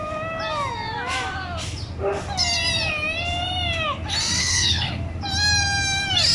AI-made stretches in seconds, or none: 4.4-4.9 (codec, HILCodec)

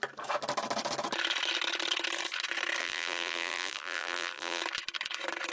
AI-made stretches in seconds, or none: 2.8-4.6 (vocoder, BigVGAN v2)